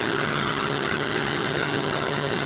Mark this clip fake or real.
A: fake